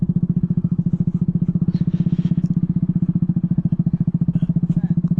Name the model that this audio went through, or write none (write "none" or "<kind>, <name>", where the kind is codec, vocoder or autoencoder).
none